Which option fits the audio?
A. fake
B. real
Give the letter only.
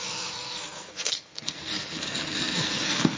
A